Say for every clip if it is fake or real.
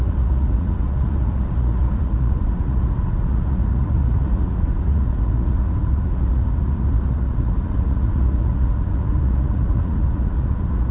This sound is fake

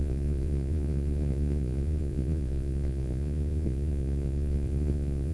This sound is fake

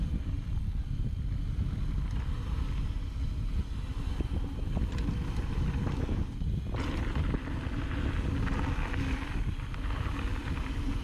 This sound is real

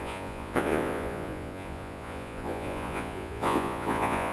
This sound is fake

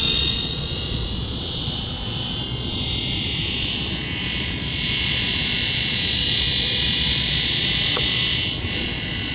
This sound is fake